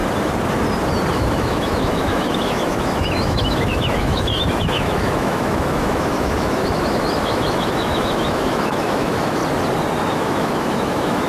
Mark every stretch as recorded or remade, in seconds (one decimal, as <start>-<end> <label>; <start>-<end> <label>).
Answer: 0.0-1.1 recorded; 1.1-9.4 remade; 9.4-10.1 recorded; 10.1-11.3 remade